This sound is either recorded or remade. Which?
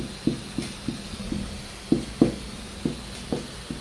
recorded